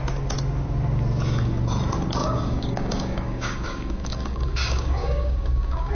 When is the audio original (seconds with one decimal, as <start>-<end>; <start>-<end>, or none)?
0.0-2.2